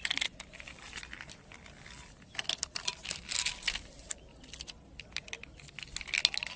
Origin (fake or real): real